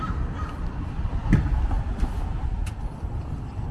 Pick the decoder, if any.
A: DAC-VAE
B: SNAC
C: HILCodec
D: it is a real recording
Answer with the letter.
D